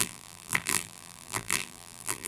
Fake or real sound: fake